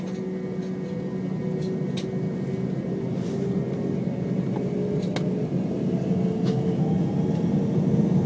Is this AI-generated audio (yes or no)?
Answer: no